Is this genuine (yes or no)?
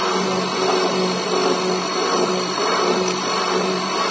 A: yes